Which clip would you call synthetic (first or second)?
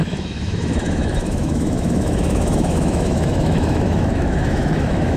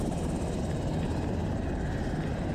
first